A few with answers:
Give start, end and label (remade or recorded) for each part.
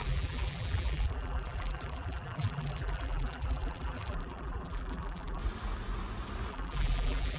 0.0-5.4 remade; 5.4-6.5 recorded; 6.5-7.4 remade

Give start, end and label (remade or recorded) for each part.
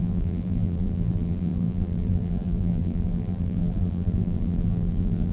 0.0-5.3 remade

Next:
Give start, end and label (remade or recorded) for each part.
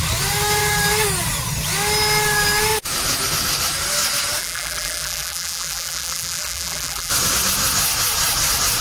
0.0-4.4 recorded; 4.4-7.1 remade; 7.1-8.8 recorded